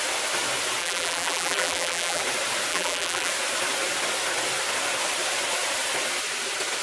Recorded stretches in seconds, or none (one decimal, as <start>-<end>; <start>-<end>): 0.0-0.8; 2.2-2.7; 3.3-6.8